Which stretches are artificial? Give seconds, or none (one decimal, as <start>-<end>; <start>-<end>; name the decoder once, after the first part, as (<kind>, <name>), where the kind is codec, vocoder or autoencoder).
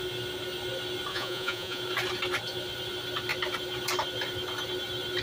1.1-1.8 (vocoder, Vocos)